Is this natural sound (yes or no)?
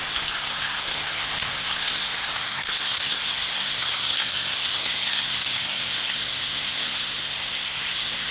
no